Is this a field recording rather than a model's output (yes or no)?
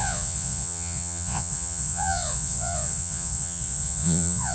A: no